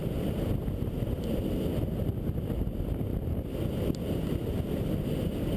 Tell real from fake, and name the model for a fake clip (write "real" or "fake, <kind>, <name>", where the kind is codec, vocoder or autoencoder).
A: real